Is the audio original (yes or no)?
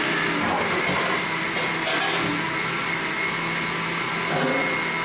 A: yes